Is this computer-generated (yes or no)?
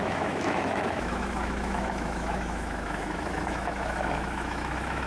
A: yes